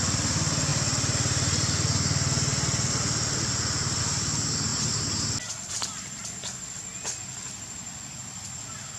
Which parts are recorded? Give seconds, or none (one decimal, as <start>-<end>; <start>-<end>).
0.0-9.0